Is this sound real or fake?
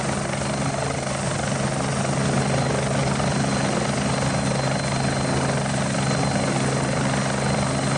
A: real